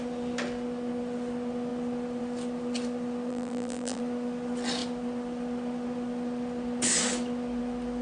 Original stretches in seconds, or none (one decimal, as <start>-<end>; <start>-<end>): 0.0-3.3; 4.0-8.0